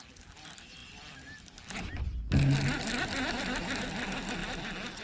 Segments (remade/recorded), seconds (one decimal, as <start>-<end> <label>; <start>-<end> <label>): 0.0-5.0 recorded